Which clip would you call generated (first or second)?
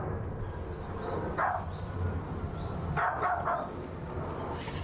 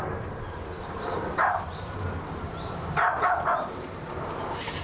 second